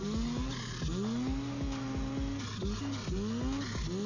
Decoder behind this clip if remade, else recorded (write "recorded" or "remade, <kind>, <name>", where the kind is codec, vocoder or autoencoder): recorded